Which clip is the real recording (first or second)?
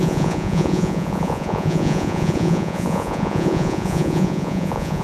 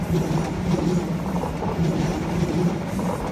second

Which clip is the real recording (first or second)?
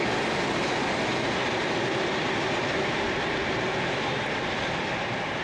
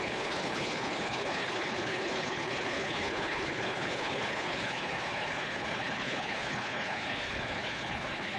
first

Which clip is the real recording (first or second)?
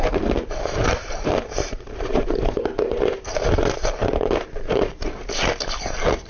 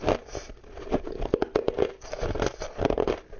second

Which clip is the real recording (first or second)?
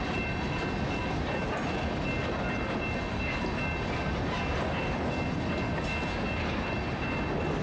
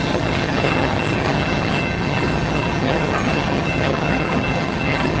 first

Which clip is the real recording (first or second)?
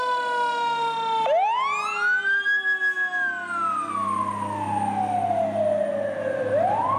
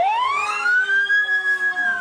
first